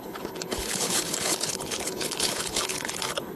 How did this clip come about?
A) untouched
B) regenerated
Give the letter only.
B